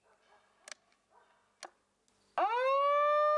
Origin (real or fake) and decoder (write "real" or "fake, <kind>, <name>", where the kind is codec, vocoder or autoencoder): real